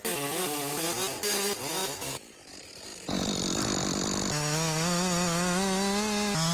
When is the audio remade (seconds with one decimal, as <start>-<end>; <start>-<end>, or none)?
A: 1.8-2.5